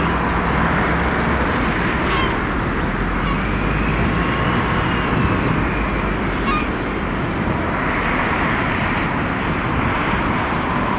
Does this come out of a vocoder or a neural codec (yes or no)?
no